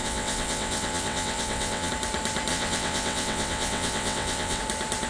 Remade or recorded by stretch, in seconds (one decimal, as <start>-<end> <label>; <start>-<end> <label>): 0.0-1.9 remade; 1.9-2.5 recorded; 2.5-4.6 remade; 4.6-5.1 recorded